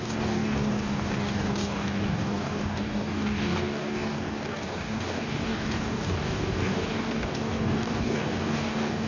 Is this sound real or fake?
fake